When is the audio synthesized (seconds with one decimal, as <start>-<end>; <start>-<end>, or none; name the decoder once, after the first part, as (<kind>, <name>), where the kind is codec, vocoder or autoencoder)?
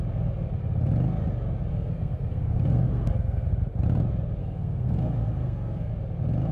1.7-3.5 (codec, SNAC); 4.4-5.9